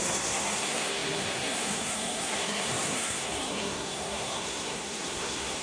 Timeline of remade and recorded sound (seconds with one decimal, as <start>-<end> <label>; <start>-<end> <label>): 0.0-5.6 remade